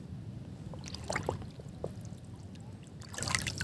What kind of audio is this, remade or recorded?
recorded